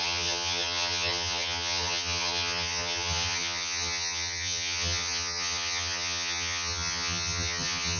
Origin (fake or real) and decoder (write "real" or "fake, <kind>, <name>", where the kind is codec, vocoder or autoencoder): fake, vocoder, HiFi-GAN